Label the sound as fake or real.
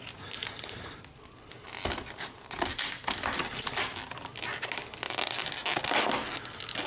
real